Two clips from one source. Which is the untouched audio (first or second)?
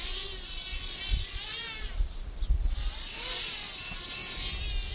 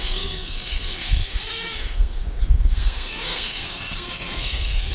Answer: first